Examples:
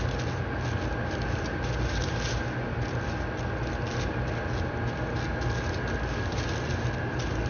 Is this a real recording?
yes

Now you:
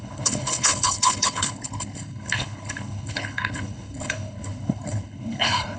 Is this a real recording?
no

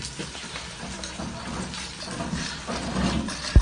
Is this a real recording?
yes